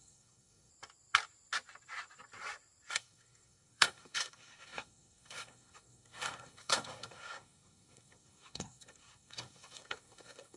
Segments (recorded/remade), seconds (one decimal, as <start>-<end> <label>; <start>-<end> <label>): 0.0-0.7 remade; 0.7-2.9 recorded; 2.9-10.6 remade